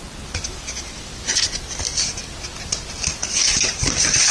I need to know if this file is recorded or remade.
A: recorded